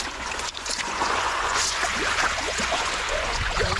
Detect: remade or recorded remade